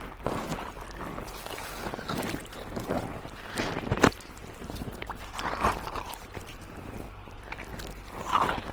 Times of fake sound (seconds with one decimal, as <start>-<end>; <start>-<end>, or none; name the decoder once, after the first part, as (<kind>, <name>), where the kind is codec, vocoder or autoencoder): 0.0-0.5 (vocoder, BigVGAN v2); 2.0-7.7; 8.2-8.7